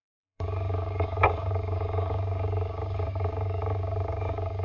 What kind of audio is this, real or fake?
fake